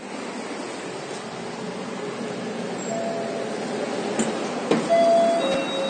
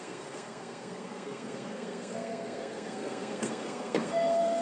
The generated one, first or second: second